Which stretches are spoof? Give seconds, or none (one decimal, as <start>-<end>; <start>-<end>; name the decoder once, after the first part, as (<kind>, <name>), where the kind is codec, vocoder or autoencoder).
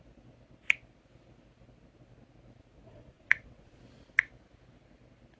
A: 2.9-3.8 (vocoder, Vocos)